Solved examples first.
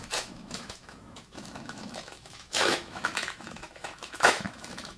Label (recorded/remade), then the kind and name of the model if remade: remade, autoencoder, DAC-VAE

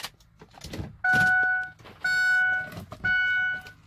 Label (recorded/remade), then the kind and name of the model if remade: recorded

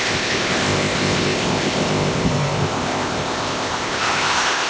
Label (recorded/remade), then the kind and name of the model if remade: remade, codec, ZipCodec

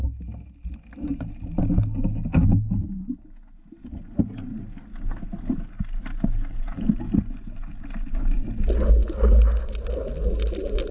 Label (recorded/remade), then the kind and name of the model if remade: recorded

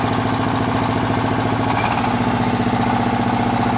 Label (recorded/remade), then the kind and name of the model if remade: recorded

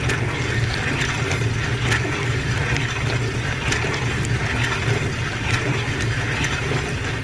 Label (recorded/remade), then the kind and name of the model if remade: recorded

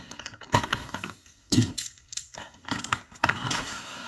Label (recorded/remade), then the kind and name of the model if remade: remade, codec, SNAC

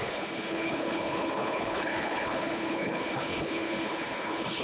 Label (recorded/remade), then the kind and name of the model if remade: remade, codec, HILCodec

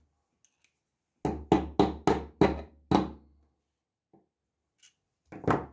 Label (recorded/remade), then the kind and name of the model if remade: recorded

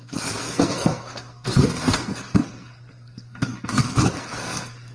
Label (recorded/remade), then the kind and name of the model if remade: remade, codec, SNAC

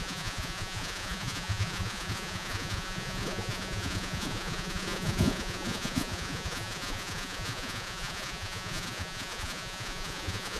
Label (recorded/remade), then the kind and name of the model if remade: remade, vocoder, Vocos